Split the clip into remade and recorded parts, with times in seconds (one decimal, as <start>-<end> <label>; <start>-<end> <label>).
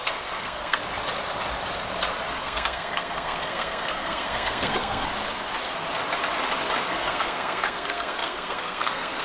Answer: 0.0-0.8 remade; 0.8-2.3 recorded; 2.3-5.1 remade; 5.1-6.9 recorded; 6.9-9.2 remade